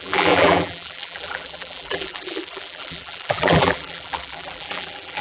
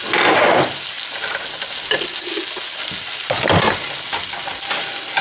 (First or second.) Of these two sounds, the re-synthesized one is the first